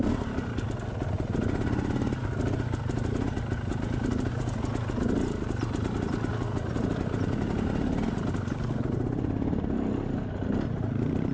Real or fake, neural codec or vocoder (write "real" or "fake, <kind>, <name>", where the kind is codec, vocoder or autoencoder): real